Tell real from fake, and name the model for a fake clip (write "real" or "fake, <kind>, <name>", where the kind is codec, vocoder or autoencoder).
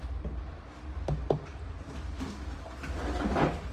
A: real